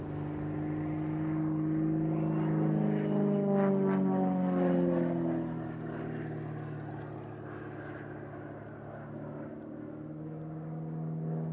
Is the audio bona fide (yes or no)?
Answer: yes